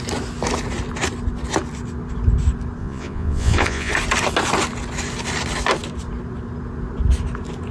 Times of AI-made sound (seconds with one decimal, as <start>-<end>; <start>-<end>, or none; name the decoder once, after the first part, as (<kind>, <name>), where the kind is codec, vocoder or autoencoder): 2.8-3.9 (vocoder, Vocos)